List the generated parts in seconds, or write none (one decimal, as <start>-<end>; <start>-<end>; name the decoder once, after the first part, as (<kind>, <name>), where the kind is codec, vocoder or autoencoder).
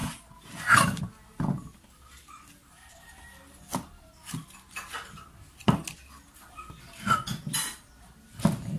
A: none